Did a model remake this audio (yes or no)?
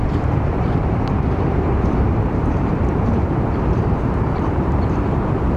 yes